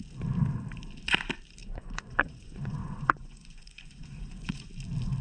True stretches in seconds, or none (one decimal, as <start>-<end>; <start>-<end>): 0.0-1.6; 4.7-5.2